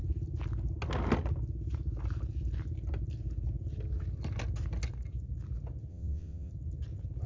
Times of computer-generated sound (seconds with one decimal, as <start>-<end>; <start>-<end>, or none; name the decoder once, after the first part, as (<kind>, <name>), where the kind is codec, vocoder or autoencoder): 5.9-6.5 (vocoder, WaveNeXt)